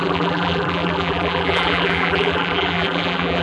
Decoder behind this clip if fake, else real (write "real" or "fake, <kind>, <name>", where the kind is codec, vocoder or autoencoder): fake, vocoder, BigVGAN v2